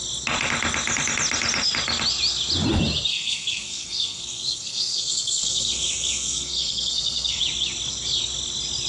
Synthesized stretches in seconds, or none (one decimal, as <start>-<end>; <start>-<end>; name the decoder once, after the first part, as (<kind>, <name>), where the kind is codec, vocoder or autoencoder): 3.1-7.4 (codec, SNAC)